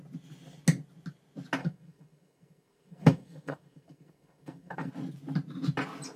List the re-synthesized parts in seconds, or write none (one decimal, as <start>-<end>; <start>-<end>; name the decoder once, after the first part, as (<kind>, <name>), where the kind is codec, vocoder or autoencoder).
1.6-4.9 (codec, SNAC)